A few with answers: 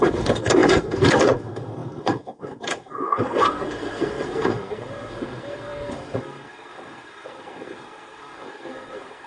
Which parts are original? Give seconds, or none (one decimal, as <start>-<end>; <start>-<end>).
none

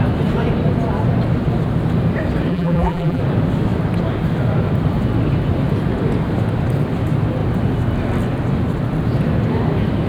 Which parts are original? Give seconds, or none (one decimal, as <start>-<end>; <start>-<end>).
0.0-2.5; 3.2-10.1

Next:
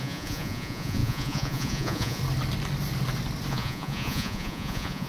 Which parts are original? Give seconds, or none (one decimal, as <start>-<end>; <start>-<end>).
2.2-3.5